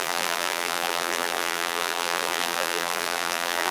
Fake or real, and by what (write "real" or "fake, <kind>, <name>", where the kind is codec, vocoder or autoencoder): fake, vocoder, BigVGAN v2